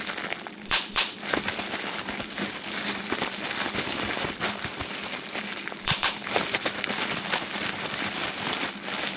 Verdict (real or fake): fake